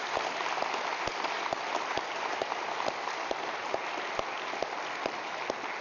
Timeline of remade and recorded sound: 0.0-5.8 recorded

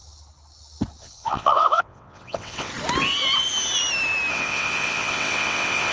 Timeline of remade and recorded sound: 0.0-1.0 recorded; 1.0-2.7 remade; 2.7-4.3 recorded; 4.3-5.9 remade

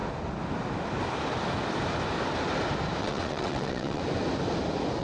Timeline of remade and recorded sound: 0.0-3.0 recorded; 3.0-4.0 remade; 4.0-5.0 recorded

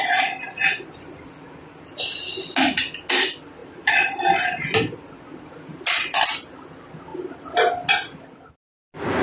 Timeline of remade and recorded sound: 0.0-9.2 recorded